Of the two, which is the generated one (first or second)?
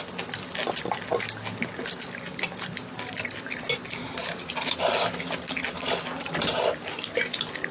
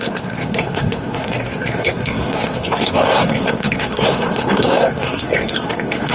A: second